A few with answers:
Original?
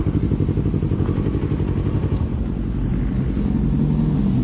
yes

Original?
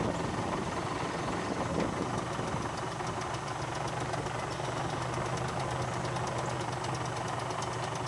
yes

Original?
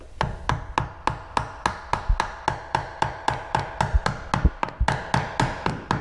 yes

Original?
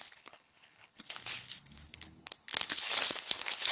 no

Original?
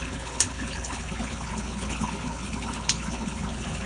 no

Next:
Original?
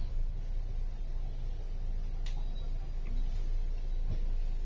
yes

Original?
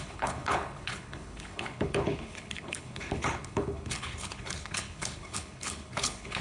no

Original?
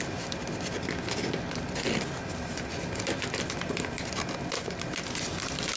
yes